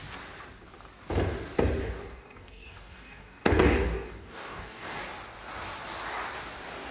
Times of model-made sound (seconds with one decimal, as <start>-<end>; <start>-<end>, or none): 1.8-5.0